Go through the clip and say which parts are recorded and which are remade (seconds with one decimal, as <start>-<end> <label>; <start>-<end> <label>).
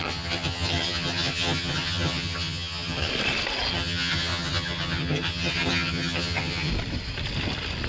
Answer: 0.0-3.1 remade; 3.1-3.7 recorded; 3.7-6.7 remade; 6.7-7.9 recorded